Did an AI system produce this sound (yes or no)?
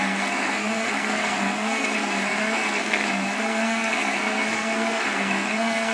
yes